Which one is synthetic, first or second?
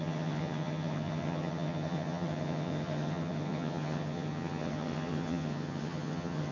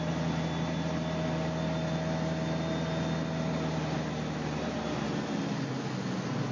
first